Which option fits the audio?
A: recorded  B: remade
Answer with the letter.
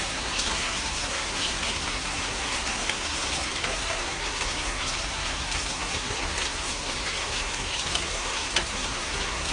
B